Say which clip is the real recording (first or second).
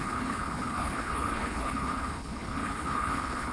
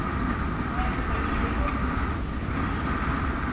second